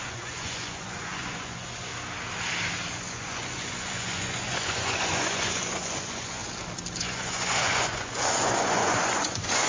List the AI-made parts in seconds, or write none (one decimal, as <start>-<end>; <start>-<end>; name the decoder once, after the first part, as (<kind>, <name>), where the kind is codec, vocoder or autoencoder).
0.0-1.9 (vocoder, Vocos); 2.9-6.4; 7.0-9.7